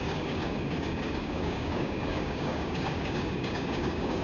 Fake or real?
fake